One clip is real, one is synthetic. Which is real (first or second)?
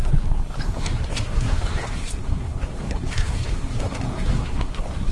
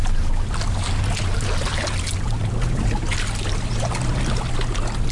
second